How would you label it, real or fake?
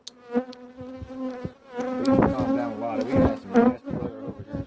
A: real